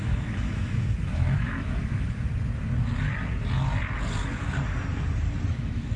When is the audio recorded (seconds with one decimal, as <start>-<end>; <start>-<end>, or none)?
2.3-5.5

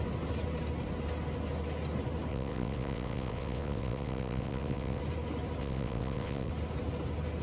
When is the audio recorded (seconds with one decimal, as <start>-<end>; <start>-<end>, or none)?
0.0-2.3; 5.0-5.6; 6.5-7.4

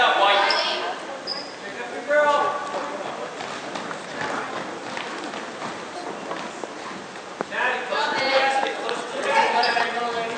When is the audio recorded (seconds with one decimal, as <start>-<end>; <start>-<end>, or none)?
0.0-8.7; 10.0-10.4

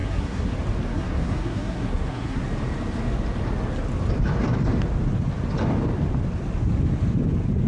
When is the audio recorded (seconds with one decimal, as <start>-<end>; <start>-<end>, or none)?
0.5-0.9; 2.4-7.7

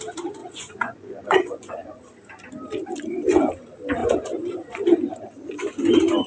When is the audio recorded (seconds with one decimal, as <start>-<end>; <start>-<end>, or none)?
0.0-0.4; 2.0-6.3

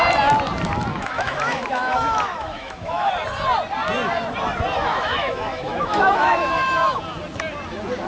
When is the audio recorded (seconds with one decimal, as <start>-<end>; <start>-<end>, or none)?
0.0-0.9; 3.1-4.9; 7.0-8.1

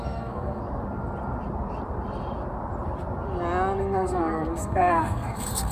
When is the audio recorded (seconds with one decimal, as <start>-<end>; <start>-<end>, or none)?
0.6-3.8

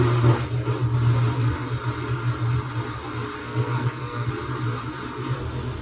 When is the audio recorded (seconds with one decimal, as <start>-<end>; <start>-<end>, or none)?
0.0-3.4; 4.3-5.8